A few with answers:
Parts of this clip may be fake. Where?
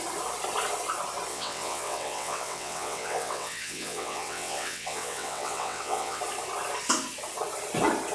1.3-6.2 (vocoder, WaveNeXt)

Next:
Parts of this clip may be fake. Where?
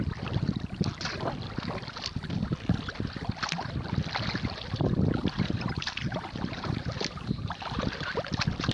5.2-7.8 (vocoder, BigVGAN v2)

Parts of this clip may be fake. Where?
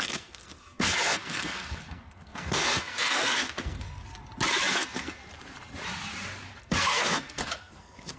0.0-4.0 (codec, SNAC); 4.7-5.2; 6.6-8.2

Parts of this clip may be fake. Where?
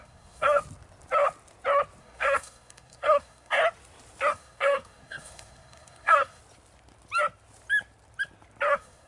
0.0-0.6 (codec, SNAC); 2.0-3.6; 4.3-6.4; 8.7-9.1